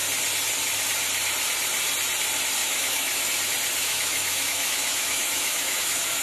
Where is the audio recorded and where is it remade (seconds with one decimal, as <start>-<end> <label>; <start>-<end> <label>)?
0.0-2.6 recorded; 2.6-3.3 remade; 3.3-3.8 recorded; 3.8-6.2 remade